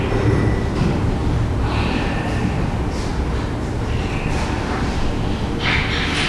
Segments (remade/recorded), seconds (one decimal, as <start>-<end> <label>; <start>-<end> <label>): 0.0-1.2 recorded; 1.2-2.5 remade; 2.5-3.1 recorded; 3.1-4.1 remade; 4.1-6.3 recorded